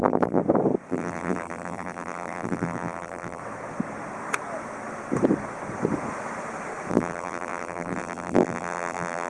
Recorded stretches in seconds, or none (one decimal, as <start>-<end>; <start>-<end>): 0.4-0.9; 3.4-6.9